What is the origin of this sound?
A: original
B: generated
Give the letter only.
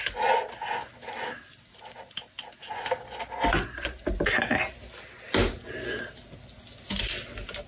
A